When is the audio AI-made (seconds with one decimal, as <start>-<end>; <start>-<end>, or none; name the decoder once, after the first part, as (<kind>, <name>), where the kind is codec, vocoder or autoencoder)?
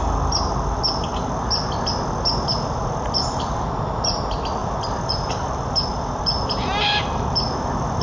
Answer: none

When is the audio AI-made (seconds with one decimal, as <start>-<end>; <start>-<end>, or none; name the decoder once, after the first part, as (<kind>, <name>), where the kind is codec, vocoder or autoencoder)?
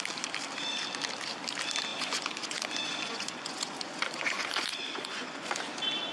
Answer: 1.9-5.6 (vocoder, Vocos)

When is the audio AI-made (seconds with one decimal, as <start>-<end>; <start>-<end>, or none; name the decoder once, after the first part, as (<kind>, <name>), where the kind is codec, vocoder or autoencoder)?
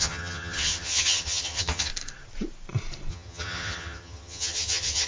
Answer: 0.0-1.9 (vocoder, HiFi-GAN); 3.1-5.1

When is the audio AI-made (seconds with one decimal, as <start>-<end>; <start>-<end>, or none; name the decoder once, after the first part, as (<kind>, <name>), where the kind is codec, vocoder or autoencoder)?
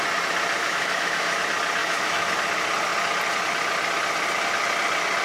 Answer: 0.6-1.4 (autoencoder, DAC-VAE); 1.8-2.3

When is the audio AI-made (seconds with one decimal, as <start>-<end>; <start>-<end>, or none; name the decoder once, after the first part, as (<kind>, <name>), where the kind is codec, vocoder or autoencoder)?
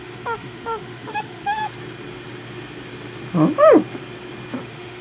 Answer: 0.0-1.6 (autoencoder, DAC-VAE); 4.6-5.0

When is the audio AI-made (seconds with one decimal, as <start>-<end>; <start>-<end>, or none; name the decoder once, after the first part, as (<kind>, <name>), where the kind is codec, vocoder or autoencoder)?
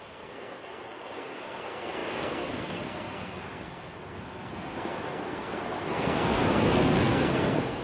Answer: 0.0-7.8 (codec, SNAC)